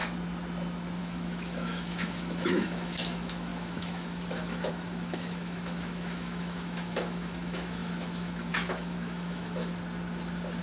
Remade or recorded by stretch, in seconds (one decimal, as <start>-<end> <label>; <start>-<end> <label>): 0.0-1.0 recorded; 1.0-9.7 remade; 9.7-10.6 recorded